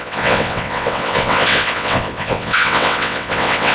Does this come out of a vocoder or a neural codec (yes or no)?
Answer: yes